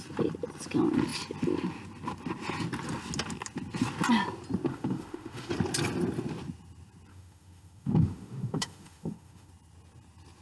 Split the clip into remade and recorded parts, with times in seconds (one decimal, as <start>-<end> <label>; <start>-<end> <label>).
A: 0.0-4.7 recorded; 4.7-5.5 remade; 5.5-7.1 recorded; 7.1-9.5 remade; 9.5-10.4 recorded